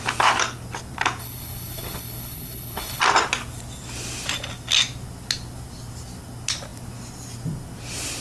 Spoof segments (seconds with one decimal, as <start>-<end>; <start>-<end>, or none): 1.2-3.0